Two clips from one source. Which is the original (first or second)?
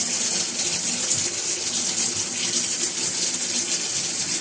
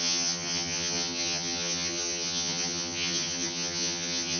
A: first